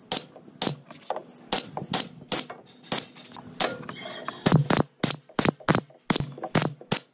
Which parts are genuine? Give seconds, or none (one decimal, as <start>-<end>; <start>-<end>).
0.0-7.1